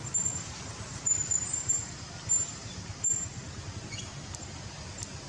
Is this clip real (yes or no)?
no